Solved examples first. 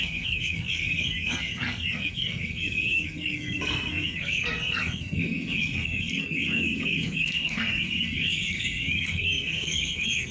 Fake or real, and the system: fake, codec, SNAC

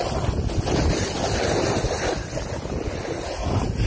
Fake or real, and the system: real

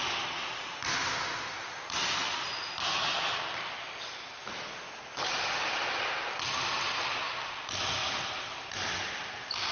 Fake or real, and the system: real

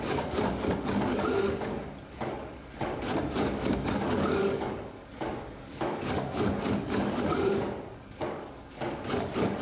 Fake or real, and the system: fake, codec, DAC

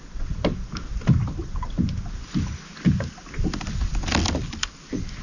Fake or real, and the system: real